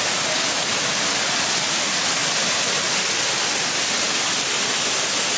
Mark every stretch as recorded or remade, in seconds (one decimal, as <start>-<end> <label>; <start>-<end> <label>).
0.0-5.4 recorded